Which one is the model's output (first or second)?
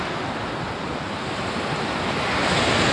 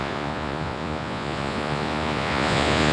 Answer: second